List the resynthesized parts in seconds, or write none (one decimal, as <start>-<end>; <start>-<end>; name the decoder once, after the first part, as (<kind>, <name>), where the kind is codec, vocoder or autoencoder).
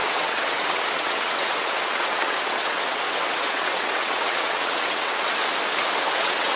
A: 0.0-5.4 (vocoder, WaveNeXt); 6.1-6.6